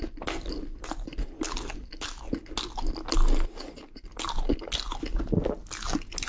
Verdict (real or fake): real